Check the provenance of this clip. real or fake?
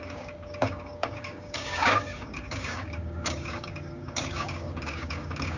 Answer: fake